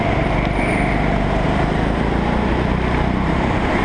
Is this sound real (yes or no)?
yes